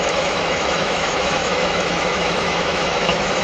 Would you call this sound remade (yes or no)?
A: yes